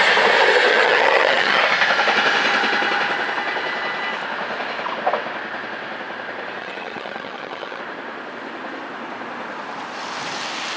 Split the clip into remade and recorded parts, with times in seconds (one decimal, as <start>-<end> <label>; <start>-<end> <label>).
0.0-0.7 recorded; 0.7-1.6 remade; 1.6-6.6 recorded; 6.6-7.8 remade; 7.8-10.8 recorded